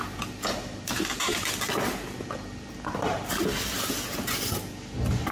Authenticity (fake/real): real